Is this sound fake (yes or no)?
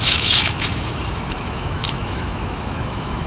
yes